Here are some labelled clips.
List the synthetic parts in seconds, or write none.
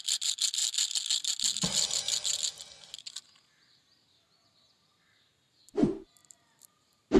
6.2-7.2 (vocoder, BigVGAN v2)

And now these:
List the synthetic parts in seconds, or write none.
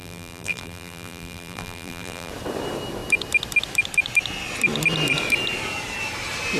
0.0-2.3 (vocoder, BigVGAN v2)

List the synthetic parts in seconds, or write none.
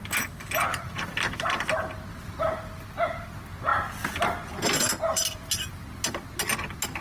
0.7-1.6 (vocoder, BigVGAN v2); 2.1-2.8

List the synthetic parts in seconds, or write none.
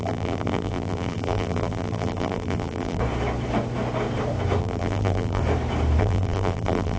0.0-3.0 (vocoder, BigVGAN v2); 4.6-5.4; 6.0-7.0